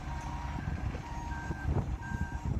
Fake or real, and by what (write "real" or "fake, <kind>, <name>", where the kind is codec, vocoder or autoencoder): fake, vocoder, BigVGAN v2